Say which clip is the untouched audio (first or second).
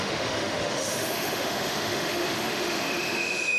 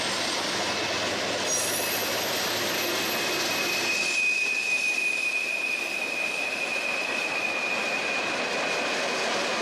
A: second